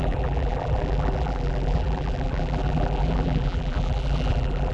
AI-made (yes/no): yes